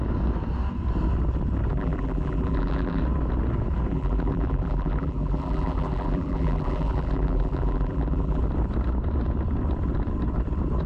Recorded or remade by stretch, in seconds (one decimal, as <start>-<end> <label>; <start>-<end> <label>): 0.0-1.7 recorded; 1.7-3.0 remade; 3.0-3.9 recorded; 3.9-8.4 remade; 8.4-10.9 recorded